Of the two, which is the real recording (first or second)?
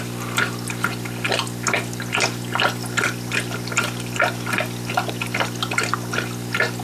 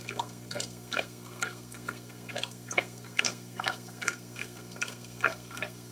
first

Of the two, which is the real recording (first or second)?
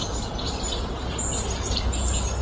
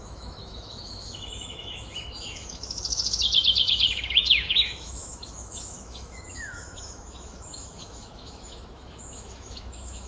first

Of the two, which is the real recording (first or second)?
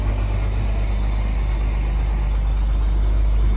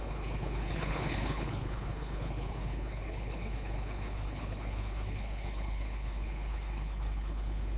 first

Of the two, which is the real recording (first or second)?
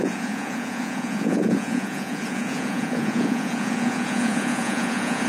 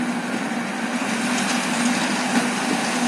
second